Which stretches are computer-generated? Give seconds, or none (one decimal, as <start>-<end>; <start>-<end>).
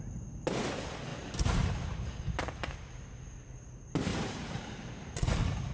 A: 1.1-2.7; 4.1-5.7